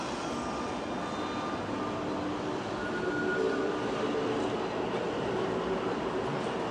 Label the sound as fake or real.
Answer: real